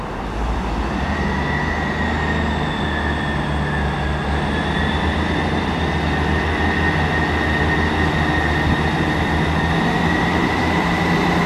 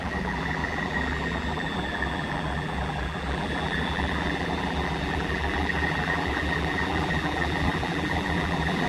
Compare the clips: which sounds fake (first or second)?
second